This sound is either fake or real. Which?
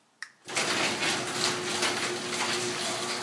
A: real